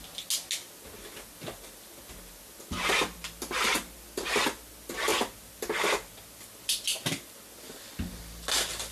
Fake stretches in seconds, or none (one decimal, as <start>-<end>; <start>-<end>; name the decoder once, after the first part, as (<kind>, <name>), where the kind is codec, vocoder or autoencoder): none